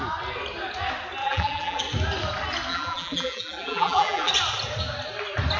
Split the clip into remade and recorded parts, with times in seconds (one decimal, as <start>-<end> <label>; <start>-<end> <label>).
0.0-1.2 recorded; 1.2-1.8 remade; 1.8-2.7 recorded; 2.7-4.3 remade; 4.3-5.6 recorded